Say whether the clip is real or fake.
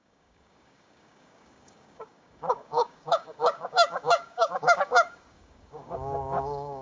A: fake